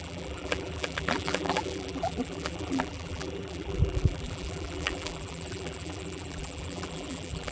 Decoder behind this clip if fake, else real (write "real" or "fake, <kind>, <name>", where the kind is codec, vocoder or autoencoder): fake, vocoder, BigVGAN v2